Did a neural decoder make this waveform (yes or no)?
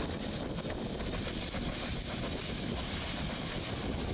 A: no